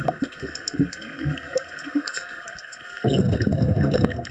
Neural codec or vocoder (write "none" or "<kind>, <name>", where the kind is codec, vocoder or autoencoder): codec, SNAC